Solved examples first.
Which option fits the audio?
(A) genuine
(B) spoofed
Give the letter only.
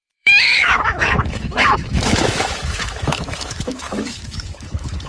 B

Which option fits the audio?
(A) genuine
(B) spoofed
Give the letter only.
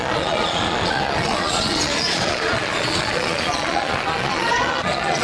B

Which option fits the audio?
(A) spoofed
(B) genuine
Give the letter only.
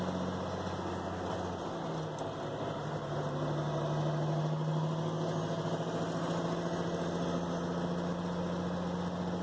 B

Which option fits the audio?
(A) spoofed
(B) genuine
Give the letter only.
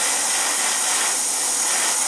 B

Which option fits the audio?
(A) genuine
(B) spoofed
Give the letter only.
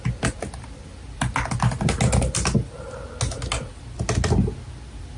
A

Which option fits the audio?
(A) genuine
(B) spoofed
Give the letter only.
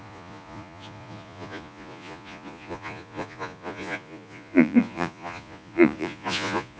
B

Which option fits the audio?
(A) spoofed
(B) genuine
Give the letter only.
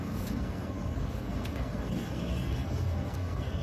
A